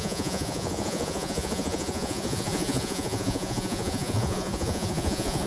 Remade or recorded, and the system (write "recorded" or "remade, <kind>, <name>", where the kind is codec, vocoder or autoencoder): remade, vocoder, Vocos